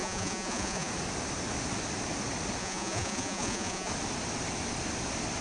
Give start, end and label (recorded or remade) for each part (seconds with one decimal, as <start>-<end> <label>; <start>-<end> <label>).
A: 0.0-0.9 remade; 0.9-2.6 recorded; 2.6-3.9 remade; 3.9-5.4 recorded